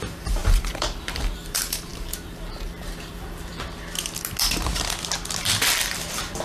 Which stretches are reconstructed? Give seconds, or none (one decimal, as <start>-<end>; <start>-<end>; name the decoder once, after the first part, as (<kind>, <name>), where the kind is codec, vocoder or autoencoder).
0.0-3.5 (vocoder, BigVGAN v2); 5.4-6.4